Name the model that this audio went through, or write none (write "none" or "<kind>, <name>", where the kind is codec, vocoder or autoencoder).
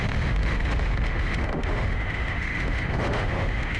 autoencoder, DAC-VAE